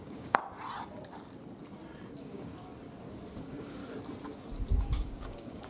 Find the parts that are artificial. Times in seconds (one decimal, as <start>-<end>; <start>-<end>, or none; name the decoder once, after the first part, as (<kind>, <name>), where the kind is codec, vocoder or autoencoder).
0.0-0.4 (codec, DAC); 2.2-2.7; 3.4-3.8; 4.7-5.7